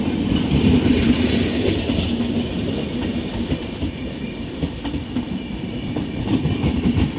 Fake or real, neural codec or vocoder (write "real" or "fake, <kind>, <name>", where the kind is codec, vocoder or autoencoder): fake, vocoder, BigVGAN v2